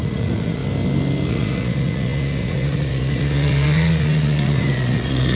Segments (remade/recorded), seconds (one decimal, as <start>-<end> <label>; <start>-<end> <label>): 0.0-0.6 remade; 0.6-1.3 recorded; 1.3-5.4 remade